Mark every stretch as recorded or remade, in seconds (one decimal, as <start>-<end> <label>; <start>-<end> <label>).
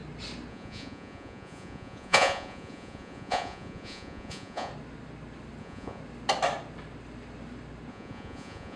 0.0-0.5 recorded; 0.5-4.7 remade; 4.7-5.6 recorded; 5.6-6.0 remade; 6.0-7.9 recorded; 7.9-8.8 remade